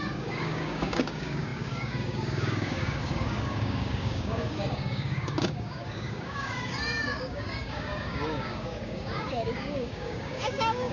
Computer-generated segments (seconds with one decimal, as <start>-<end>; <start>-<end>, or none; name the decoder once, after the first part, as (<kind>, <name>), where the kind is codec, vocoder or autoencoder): 0.0-10.9 (codec, DAC)